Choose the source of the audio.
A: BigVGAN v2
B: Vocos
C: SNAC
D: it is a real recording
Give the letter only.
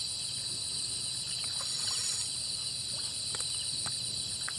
D